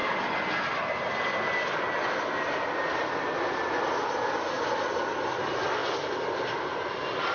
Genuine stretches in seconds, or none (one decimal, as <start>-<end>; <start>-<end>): 0.0-7.3

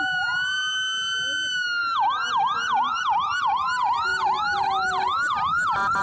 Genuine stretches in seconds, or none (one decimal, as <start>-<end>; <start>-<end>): 0.0-4.1

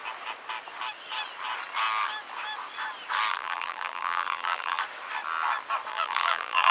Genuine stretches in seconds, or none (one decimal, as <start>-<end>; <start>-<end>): 0.0-3.3; 4.8-5.9

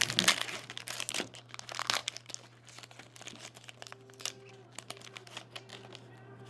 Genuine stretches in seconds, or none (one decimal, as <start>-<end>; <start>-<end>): 0.0-6.5

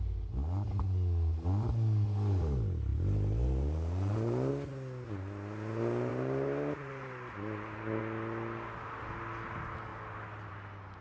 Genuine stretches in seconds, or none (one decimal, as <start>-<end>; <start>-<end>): 0.0-2.9; 4.5-6.1; 8.0-9.9; 10.5-11.0

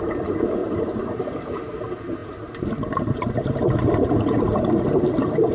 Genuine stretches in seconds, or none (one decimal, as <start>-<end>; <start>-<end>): none